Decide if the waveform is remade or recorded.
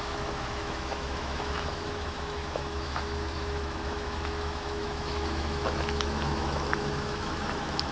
remade